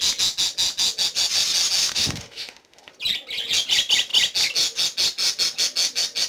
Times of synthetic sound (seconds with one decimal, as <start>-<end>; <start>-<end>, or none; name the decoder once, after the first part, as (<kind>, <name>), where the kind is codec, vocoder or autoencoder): 1.8-2.9 (autoencoder, DAC-VAE)